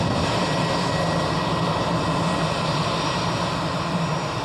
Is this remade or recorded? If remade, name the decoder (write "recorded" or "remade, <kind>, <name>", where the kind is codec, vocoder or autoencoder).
recorded